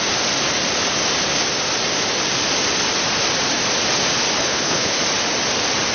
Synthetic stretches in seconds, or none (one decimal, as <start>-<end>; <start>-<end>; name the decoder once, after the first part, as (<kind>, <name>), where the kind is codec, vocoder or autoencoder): 4.4-5.0 (codec, HILCodec)